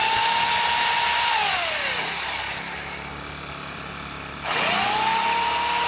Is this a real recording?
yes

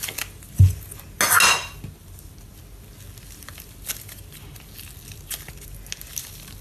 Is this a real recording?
yes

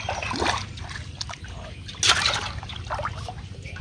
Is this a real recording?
yes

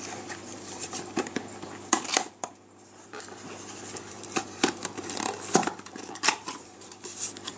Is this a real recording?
no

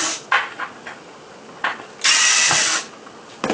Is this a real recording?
yes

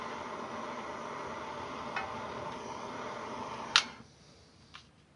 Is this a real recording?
yes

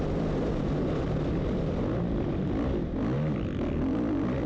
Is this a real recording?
yes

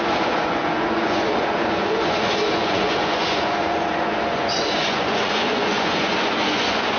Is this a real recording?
no